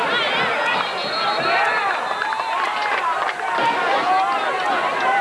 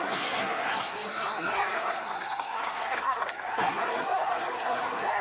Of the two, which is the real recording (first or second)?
first